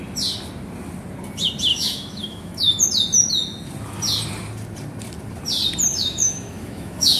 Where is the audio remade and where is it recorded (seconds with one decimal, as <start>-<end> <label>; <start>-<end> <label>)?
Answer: 0.0-1.7 recorded; 1.7-2.8 remade; 2.8-5.9 recorded; 5.9-7.2 remade